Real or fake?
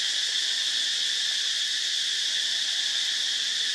real